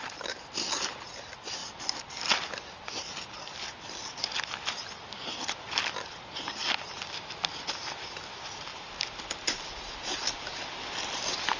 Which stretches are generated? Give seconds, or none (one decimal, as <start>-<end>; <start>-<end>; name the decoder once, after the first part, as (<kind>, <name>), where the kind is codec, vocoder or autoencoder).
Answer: none